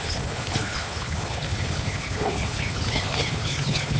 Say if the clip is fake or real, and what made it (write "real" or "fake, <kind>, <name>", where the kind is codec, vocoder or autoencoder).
fake, codec, HILCodec